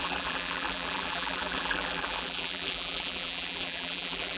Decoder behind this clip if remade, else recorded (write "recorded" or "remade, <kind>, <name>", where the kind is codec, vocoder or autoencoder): remade, vocoder, BigVGAN v2